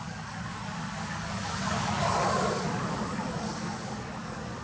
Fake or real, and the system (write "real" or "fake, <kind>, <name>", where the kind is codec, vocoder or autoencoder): fake, codec, DAC